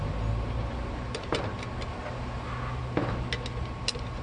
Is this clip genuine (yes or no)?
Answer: yes